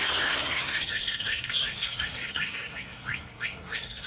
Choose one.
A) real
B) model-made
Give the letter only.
B